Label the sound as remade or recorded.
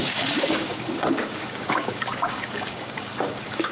remade